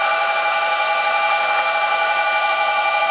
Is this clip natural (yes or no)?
no